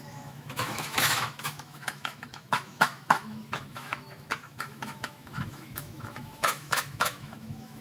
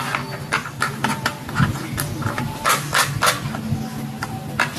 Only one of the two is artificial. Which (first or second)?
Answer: first